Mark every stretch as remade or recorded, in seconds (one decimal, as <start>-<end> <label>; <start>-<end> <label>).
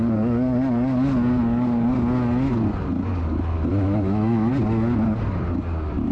0.0-3.7 recorded; 3.7-4.5 remade; 4.5-6.1 recorded